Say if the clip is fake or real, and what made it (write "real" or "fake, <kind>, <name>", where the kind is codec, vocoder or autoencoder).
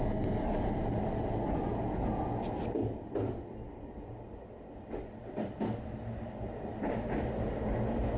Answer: real